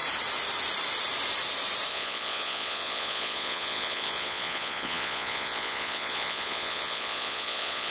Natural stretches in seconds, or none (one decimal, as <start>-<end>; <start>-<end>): 0.0-1.9